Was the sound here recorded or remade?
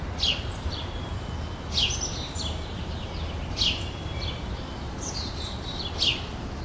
recorded